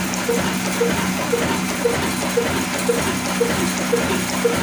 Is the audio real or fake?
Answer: real